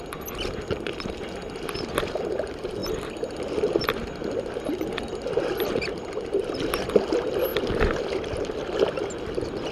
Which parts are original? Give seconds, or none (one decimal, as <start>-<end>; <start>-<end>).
0.0-9.7